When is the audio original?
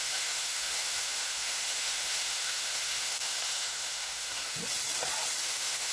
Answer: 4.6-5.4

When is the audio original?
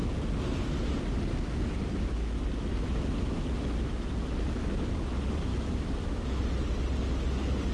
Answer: 0.0-5.5; 6.4-7.7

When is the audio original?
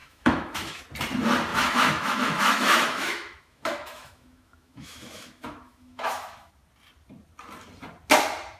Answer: 0.8-1.5; 6.5-8.6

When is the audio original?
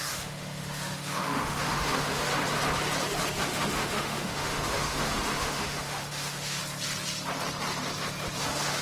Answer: 2.3-3.4; 6.6-8.4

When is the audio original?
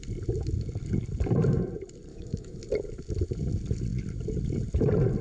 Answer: 0.0-2.1; 2.6-5.2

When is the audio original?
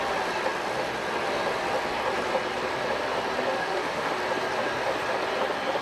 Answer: 0.0-3.6; 4.1-5.8